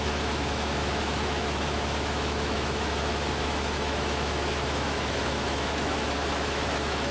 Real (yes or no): no